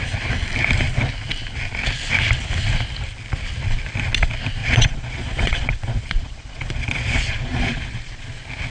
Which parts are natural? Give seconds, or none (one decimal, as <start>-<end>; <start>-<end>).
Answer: 0.0-4.6; 8.2-8.7